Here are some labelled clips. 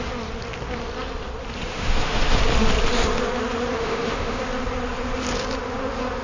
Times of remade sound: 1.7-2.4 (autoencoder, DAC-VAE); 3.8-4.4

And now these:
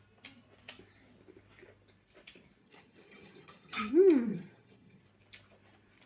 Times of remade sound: 2.6-3.9 (vocoder, HiFi-GAN); 4.3-5.0

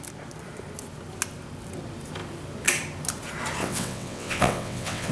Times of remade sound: 3.6-5.1 (vocoder, WaveNeXt)

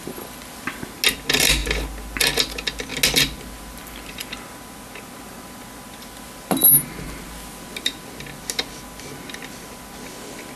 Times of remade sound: none

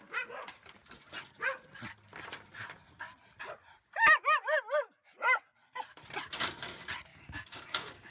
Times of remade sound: 7.1-8.1 (codec, DAC)

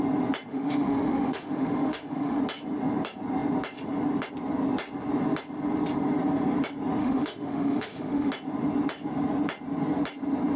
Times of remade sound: 0.5-2.4 (autoencoder, DAC-VAE); 7.0-8.3

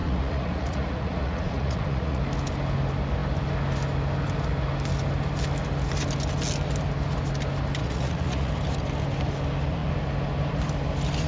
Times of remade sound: 0.0-2.2 (vocoder, Vocos); 7.8-8.5

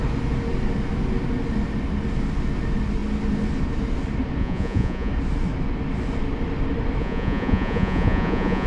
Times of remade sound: 4.4-5.1 (vocoder, Vocos); 7.0-8.7